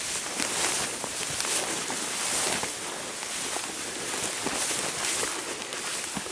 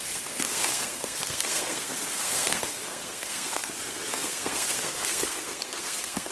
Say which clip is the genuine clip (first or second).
first